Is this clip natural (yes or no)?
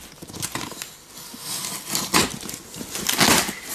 yes